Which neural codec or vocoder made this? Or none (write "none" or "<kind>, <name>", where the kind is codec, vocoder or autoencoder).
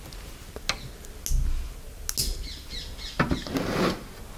none